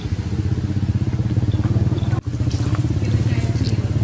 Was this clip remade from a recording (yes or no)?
no